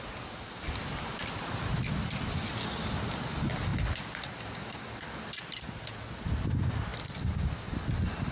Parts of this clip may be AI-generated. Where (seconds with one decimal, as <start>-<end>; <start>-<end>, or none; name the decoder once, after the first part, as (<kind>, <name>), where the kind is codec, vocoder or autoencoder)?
none

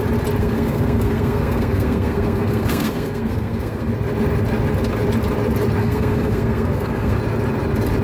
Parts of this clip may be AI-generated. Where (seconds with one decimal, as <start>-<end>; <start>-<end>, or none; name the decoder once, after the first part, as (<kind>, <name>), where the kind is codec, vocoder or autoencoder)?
0.4-3.9 (codec, SNAC); 5.8-7.2

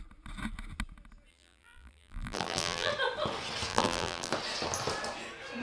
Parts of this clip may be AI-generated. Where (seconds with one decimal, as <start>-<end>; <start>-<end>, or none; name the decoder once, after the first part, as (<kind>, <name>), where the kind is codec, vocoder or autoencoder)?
1.3-2.9 (vocoder, BigVGAN v2); 3.7-4.3

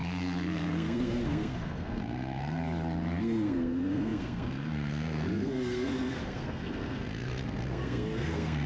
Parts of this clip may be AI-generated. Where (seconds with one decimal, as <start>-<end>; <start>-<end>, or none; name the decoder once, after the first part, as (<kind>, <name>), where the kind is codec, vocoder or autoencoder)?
0.0-2.6 (codec, SNAC); 3.2-8.7

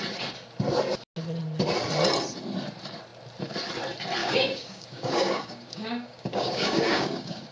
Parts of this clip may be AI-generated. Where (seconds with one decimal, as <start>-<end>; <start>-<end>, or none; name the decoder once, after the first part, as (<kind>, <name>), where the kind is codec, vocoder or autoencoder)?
4.2-7.5 (codec, DAC)

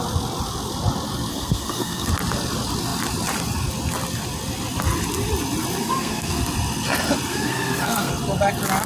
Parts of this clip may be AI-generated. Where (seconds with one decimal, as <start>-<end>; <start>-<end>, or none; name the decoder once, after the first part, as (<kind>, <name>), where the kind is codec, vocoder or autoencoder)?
1.3-2.1 (codec, SNAC); 5.8-6.4; 7.3-8.1